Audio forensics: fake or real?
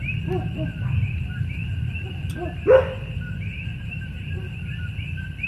fake